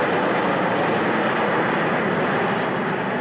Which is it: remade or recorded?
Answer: recorded